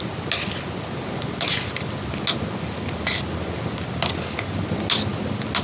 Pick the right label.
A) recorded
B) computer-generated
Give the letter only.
A